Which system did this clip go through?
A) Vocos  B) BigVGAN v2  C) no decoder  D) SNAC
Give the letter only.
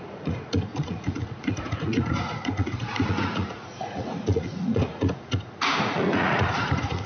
A